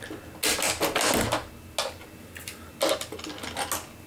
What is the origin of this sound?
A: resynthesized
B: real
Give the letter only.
B